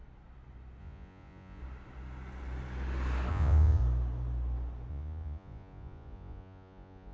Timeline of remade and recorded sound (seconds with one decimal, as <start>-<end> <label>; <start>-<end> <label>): 0.0-0.8 recorded; 0.8-1.6 remade; 1.6-3.3 recorded; 3.3-3.8 remade; 3.8-4.9 recorded; 4.9-7.1 remade